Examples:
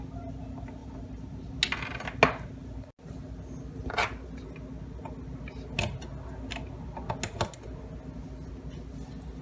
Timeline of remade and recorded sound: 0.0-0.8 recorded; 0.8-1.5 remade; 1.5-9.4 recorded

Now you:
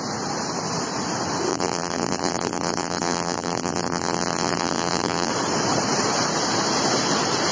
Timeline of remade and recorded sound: 0.0-1.5 recorded; 1.5-5.3 remade; 5.3-7.5 recorded